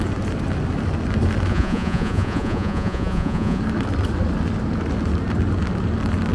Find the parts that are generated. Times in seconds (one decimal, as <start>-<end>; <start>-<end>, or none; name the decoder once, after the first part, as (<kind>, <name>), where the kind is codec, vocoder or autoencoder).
1.5-3.6 (vocoder, Vocos)